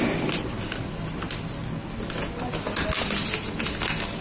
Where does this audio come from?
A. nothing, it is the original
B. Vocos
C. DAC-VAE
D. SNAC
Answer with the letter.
A